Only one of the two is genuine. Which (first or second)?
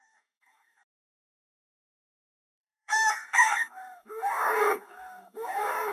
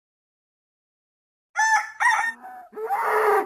second